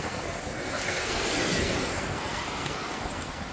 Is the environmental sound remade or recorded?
remade